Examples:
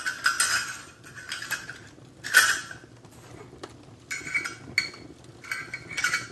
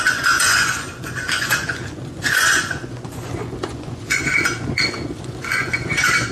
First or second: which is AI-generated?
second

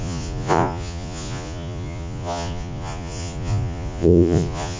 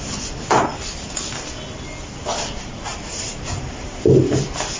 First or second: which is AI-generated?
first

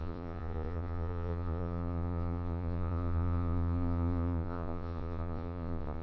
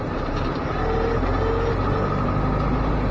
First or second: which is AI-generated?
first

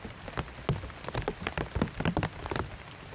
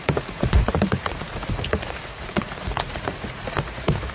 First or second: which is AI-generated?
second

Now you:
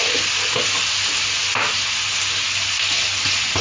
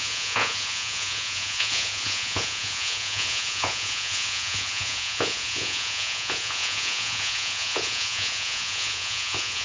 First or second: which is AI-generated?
second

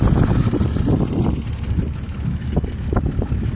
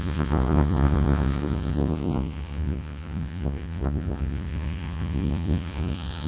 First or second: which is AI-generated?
second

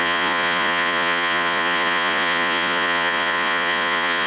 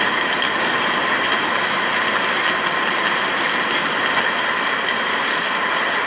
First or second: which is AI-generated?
first